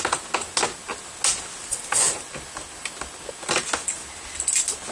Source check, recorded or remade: recorded